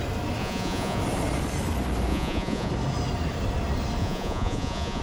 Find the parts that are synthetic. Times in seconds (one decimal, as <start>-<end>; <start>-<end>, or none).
0.4-1.0; 2.1-2.7; 4.0-5.0